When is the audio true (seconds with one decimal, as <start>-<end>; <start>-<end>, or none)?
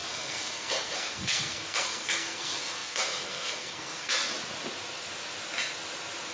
4.3-6.3